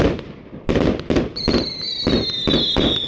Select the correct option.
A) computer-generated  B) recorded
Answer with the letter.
B